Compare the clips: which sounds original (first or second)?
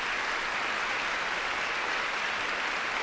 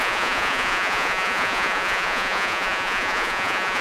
first